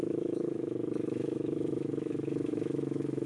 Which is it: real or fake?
fake